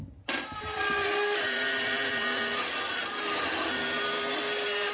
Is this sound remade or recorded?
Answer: remade